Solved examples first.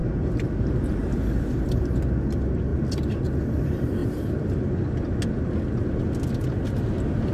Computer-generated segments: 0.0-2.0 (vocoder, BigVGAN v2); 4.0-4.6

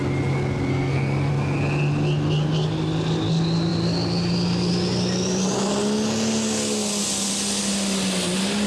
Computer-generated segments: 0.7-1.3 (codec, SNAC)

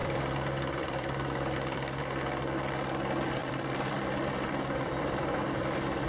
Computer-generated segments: 0.0-2.0 (vocoder, BigVGAN v2); 3.4-6.1

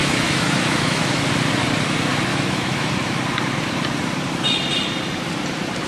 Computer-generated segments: 0.0-1.2 (autoencoder, DAC-VAE); 2.3-2.9

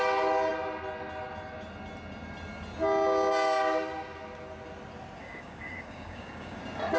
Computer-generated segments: 5.2-6.6 (codec, DAC)

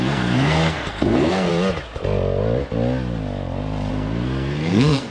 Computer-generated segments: 0.0-1.5 (codec, SNAC); 3.9-5.1

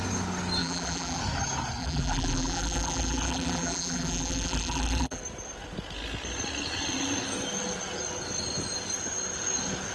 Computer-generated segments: 0.6-1.2 (vocoder, BigVGAN v2); 1.8-5.2